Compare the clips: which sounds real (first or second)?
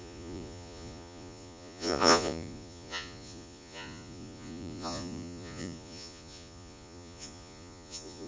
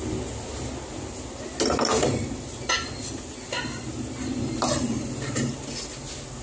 second